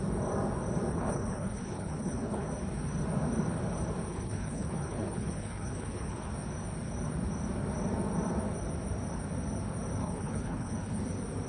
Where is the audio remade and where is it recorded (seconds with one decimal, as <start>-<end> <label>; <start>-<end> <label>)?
0.0-0.9 recorded; 0.9-2.5 remade; 2.5-4.1 recorded; 4.1-6.3 remade; 6.3-10.0 recorded; 10.0-11.0 remade; 11.0-11.5 recorded